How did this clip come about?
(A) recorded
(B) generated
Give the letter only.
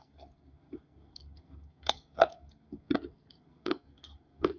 B